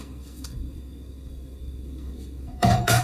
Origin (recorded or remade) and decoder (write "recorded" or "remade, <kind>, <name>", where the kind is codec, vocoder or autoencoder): remade, codec, SNAC